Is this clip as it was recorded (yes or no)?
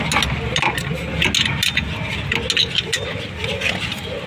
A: yes